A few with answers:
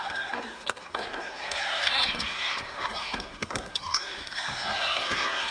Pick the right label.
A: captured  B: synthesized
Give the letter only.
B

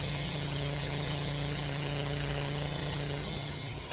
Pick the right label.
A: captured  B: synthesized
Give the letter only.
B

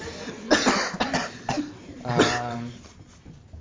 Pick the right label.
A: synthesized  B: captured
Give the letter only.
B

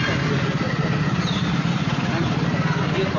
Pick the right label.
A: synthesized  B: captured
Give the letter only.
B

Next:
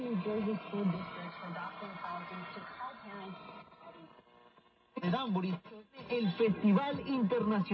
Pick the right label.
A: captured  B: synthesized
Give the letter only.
A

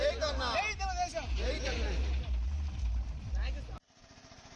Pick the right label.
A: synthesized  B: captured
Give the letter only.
B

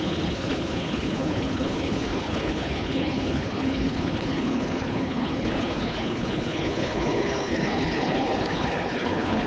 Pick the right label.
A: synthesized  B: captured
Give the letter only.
A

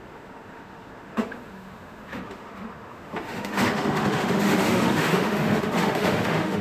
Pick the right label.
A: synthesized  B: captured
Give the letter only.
A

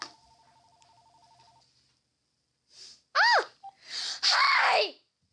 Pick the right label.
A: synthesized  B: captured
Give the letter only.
B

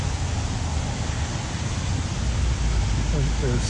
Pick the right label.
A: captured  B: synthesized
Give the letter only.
A